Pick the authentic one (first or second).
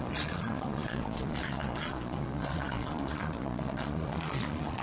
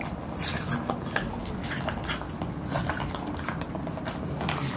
second